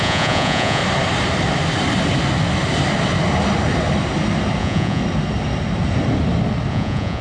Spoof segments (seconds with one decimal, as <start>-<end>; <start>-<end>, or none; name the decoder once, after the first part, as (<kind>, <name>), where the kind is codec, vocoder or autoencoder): 0.0-0.8 (vocoder, Vocos); 4.6-5.0; 6.7-7.2